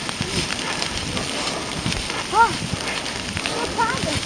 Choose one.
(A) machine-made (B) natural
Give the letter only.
B